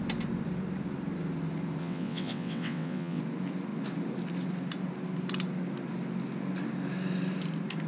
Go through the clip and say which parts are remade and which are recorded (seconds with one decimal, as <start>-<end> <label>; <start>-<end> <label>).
0.0-1.8 recorded; 1.8-3.2 remade; 3.2-7.9 recorded